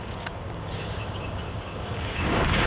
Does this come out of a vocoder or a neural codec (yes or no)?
yes